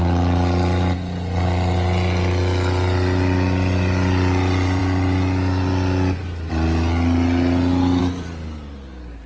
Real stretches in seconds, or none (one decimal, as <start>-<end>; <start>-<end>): 0.0-9.3